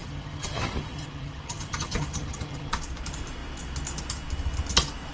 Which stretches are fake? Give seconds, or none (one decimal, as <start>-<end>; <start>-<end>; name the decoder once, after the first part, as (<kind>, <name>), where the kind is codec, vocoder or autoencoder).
0.0-2.7 (vocoder, HiFi-GAN)